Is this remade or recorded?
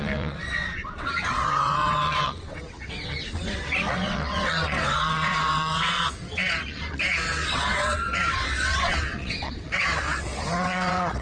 remade